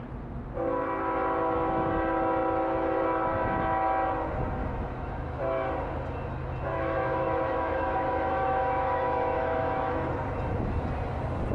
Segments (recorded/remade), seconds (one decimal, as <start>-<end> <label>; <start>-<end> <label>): 0.0-4.6 recorded; 4.6-5.4 remade; 5.4-6.7 recorded; 6.7-10.1 remade; 10.1-11.5 recorded

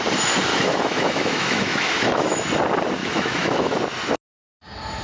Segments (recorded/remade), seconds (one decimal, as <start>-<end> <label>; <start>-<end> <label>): 0.0-0.5 recorded; 0.5-2.4 remade; 2.4-3.0 recorded; 3.0-3.8 remade; 3.8-5.0 recorded

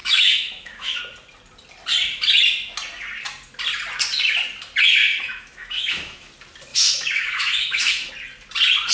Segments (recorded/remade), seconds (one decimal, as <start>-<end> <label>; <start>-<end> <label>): 0.0-1.0 remade; 1.0-5.1 recorded; 5.1-6.3 remade; 6.3-6.7 recorded; 6.7-8.1 remade; 8.1-8.9 recorded

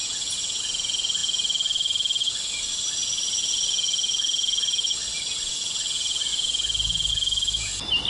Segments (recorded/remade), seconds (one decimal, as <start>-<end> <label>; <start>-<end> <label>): 0.0-8.1 recorded

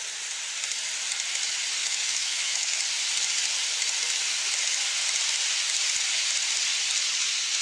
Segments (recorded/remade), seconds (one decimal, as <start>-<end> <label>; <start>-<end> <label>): 0.0-1.8 recorded; 1.8-2.7 remade; 2.7-7.6 recorded

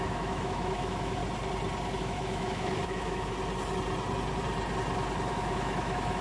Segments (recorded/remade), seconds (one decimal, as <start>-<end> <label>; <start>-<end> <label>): 0.0-1.2 remade; 1.2-2.0 recorded; 2.0-3.3 remade; 3.3-5.3 recorded; 5.3-6.2 remade